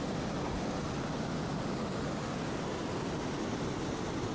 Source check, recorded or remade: recorded